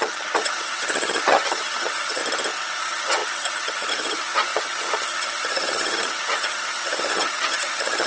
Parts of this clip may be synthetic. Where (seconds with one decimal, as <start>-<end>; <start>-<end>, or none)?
0.0-2.2; 2.8-8.1